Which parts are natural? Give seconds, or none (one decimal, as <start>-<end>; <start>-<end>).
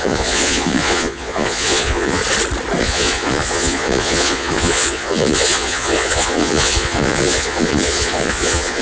2.2-2.8